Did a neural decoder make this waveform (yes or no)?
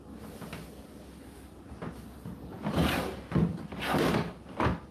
no